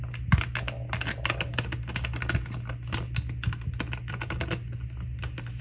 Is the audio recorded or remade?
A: recorded